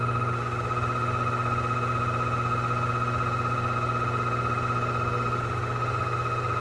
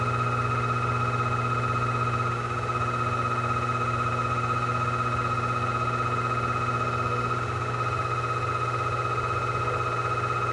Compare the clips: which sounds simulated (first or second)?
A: first